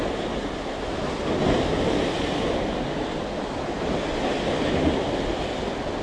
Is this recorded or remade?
recorded